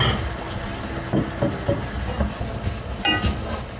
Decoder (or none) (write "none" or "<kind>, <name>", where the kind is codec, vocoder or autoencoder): none